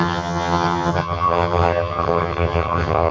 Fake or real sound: fake